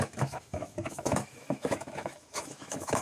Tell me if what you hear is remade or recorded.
remade